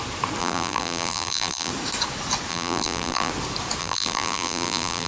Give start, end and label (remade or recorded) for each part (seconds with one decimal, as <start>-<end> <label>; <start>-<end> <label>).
0.0-0.4 recorded; 0.4-1.7 remade; 1.7-2.5 recorded; 2.5-3.3 remade; 3.3-3.8 recorded; 3.8-5.1 remade